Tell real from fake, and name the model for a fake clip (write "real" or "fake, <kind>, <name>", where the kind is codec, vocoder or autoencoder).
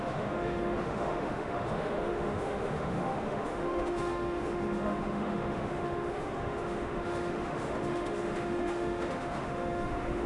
fake, autoencoder, DAC-VAE